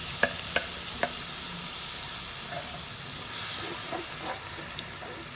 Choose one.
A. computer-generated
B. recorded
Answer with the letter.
B